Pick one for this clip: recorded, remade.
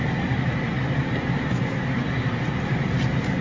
recorded